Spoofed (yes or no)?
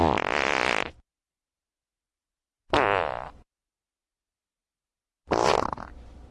no